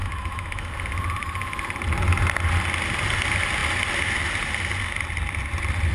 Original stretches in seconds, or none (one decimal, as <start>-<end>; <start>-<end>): 0.7-5.9